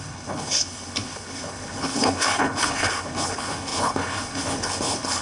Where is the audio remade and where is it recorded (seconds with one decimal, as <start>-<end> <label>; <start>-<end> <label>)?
0.0-5.2 remade